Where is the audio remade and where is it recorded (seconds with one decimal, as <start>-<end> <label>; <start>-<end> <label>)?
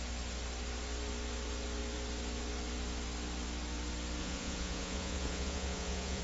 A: 0.0-4.2 recorded; 4.2-6.2 remade